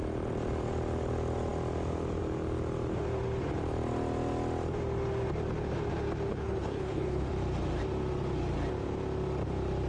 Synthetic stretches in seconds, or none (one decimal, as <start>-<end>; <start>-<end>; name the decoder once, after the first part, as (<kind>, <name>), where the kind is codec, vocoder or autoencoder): 6.3-7.3 (codec, HILCodec)